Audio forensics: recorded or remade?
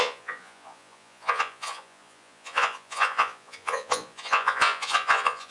remade